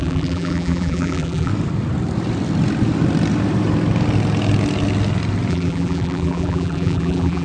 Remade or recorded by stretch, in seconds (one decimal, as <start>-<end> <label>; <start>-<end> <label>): 0.0-1.5 remade; 1.5-5.5 recorded; 5.5-7.4 remade